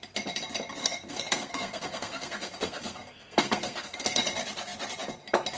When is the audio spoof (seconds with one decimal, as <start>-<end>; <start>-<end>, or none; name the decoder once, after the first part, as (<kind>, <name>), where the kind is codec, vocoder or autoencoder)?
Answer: 0.8-4.2 (codec, SNAC)